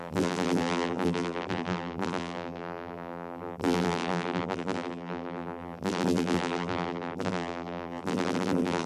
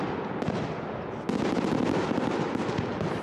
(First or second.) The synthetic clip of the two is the first